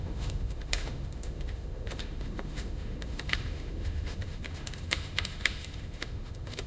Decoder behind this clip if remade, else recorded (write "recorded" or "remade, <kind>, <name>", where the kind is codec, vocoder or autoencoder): remade, autoencoder, DAC-VAE